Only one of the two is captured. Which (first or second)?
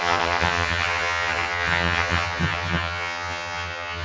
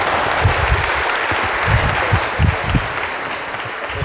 second